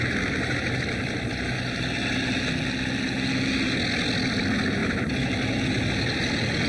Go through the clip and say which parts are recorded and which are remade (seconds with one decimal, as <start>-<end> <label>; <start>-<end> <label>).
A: 0.0-6.7 recorded